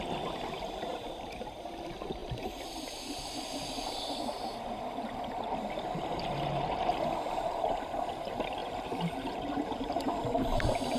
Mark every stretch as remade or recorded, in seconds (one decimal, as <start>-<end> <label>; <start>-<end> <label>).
0.0-8.6 recorded; 8.6-10.0 remade; 10.0-11.0 recorded